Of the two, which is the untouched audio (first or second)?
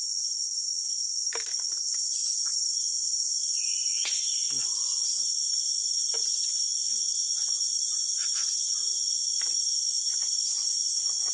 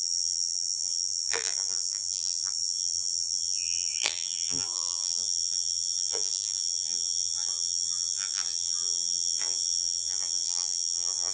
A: first